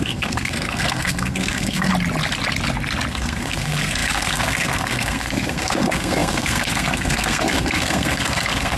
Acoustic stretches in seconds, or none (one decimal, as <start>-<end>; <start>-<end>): 1.9-3.1